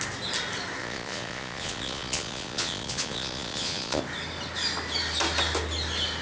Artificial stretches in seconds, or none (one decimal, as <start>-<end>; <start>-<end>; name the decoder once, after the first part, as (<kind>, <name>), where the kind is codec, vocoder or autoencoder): 0.8-4.0 (vocoder, Vocos)